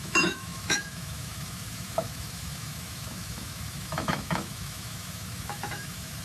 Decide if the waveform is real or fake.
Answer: fake